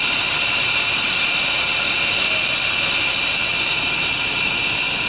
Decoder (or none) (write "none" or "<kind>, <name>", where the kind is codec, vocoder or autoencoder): none